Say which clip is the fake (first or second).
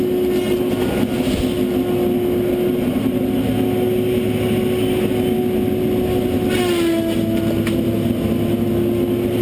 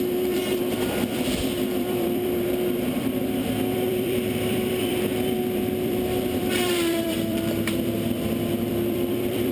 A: second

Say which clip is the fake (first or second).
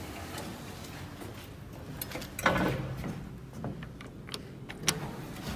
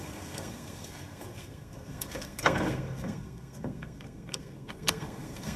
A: second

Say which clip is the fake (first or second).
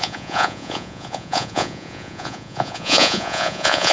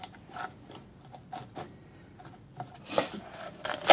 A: first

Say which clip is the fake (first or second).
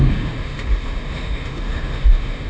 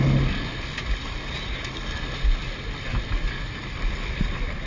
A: first